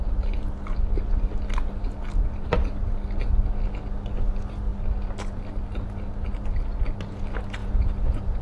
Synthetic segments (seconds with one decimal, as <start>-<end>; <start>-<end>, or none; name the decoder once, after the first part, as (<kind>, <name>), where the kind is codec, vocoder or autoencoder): 7.6-8.4 (vocoder, Vocos)

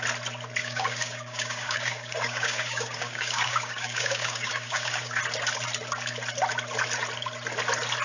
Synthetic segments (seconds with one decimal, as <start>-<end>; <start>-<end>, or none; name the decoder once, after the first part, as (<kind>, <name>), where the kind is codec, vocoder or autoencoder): 0.6-5.2 (codec, DAC)

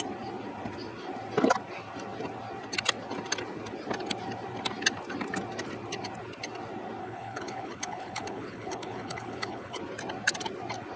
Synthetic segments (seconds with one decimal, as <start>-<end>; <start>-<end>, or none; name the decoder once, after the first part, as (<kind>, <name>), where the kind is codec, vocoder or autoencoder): 7.0-9.8 (codec, HILCodec)